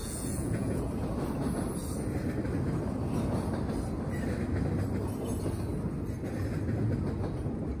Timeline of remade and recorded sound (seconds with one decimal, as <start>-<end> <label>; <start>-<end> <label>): 0.0-0.8 remade; 0.8-7.8 recorded